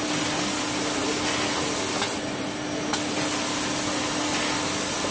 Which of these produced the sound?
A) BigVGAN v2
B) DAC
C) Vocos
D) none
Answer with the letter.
D